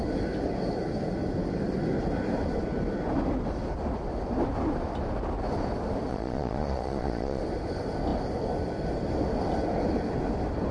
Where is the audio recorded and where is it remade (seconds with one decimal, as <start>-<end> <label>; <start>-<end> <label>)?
0.0-6.1 recorded; 6.1-7.4 remade; 7.4-10.7 recorded